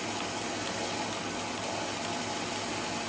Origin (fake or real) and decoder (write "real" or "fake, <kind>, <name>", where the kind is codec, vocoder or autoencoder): real